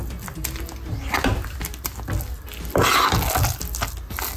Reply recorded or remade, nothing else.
recorded